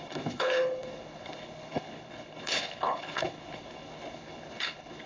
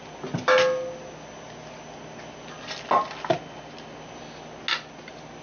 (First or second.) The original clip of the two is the second